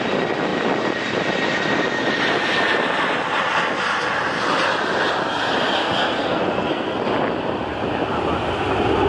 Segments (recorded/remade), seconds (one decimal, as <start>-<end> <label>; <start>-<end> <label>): 0.0-5.8 recorded; 5.8-7.0 remade; 7.0-9.1 recorded